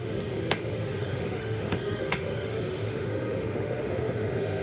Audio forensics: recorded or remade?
remade